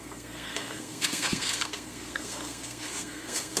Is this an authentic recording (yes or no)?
no